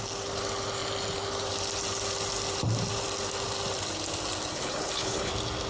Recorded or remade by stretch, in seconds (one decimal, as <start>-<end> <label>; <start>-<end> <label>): 0.0-4.5 recorded; 4.5-5.3 remade; 5.3-5.7 recorded